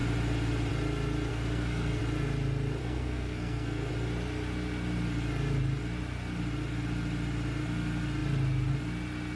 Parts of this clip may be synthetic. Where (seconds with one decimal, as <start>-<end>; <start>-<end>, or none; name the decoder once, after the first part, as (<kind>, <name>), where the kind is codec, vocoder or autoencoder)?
1.3-2.0 (codec, SNAC); 2.8-3.9